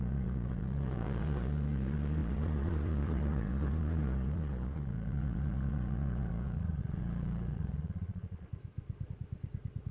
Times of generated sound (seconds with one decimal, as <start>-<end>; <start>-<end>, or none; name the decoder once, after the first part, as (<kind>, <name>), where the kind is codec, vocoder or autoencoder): 0.0-8.5 (vocoder, Vocos)